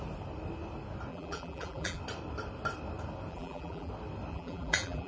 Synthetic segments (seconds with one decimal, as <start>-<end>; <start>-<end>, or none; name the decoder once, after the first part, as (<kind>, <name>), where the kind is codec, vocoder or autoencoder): 1.1-2.0 (vocoder, BigVGAN v2); 3.3-3.9; 4.3-5.1